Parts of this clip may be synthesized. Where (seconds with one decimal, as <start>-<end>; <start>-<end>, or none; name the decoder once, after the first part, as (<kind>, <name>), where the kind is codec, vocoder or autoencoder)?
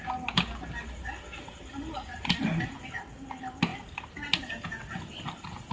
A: none